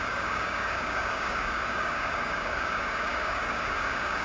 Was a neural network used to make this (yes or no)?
yes